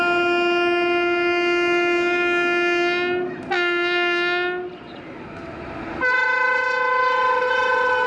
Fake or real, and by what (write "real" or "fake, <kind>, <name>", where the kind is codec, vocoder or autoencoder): real